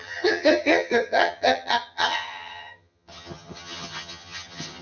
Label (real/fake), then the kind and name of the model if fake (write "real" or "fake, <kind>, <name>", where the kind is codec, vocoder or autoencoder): fake, vocoder, HiFi-GAN